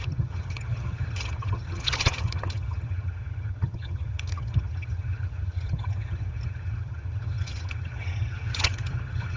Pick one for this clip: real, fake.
fake